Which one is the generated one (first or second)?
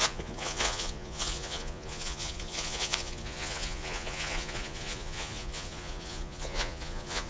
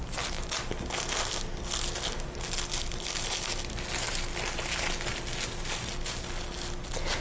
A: first